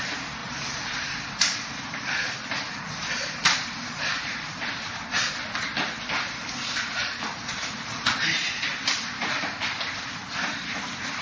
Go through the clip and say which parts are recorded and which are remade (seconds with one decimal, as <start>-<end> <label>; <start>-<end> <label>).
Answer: 0.0-0.4 recorded; 0.4-5.3 remade; 5.3-7.0 recorded; 7.0-9.3 remade; 9.3-11.2 recorded